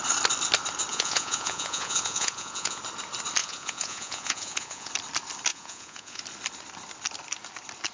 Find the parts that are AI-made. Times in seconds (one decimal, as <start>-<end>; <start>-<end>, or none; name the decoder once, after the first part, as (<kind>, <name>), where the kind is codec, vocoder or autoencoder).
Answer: 0.9-2.8 (vocoder, Vocos); 3.4-4.9; 5.5-6.2